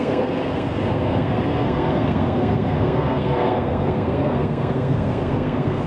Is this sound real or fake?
fake